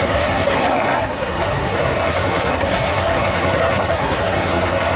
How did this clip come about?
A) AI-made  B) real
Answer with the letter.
A